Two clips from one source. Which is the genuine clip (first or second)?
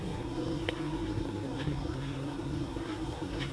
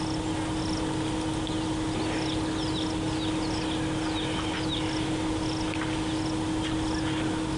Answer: second